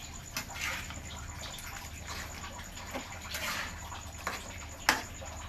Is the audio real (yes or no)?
yes